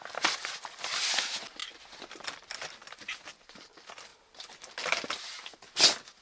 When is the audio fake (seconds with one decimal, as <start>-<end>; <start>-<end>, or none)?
none